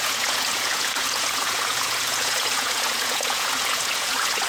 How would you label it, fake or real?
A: fake